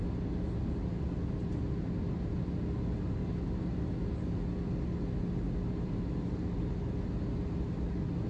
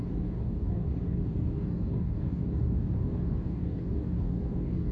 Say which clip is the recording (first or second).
first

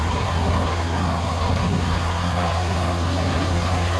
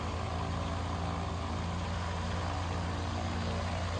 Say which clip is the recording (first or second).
second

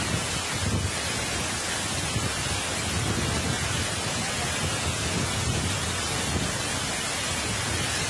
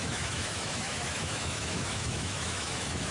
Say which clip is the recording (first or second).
first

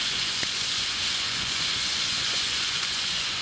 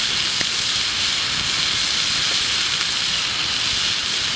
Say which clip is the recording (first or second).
second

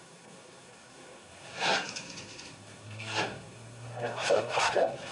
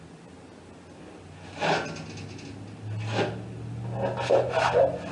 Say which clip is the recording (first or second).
second